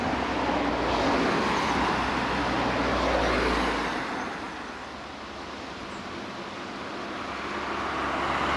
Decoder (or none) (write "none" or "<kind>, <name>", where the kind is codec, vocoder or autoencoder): none